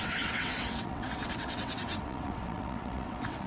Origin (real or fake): fake